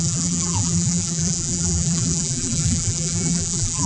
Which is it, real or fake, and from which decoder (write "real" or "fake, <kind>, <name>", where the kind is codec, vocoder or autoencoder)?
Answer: fake, vocoder, BigVGAN v2